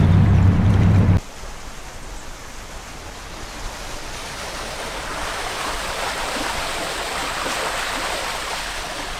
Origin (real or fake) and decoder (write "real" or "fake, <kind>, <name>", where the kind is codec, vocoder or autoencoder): fake, vocoder, BigVGAN v2